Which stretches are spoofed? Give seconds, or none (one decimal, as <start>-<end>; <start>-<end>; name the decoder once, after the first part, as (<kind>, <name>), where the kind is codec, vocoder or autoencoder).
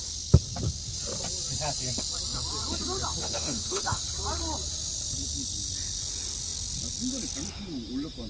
3.2-4.0 (autoencoder, DAC-VAE)